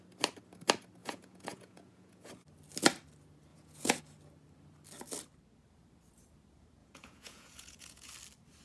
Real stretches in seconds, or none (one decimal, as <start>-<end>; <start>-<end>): 0.0-1.0; 2.3-3.5; 4.0-6.8; 8.1-8.6